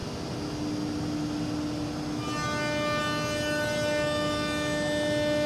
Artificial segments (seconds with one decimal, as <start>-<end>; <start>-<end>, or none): none